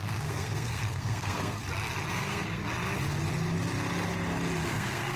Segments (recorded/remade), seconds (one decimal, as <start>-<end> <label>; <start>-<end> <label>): 0.0-1.6 remade; 1.6-2.1 recorded; 2.1-2.6 remade; 2.6-4.7 recorded; 4.7-5.2 remade